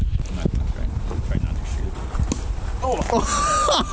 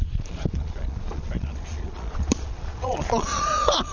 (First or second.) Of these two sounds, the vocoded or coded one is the second